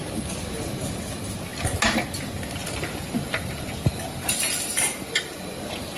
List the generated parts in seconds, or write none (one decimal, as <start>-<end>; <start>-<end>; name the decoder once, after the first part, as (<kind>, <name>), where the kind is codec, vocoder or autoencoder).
2.6-5.6 (vocoder, BigVGAN v2)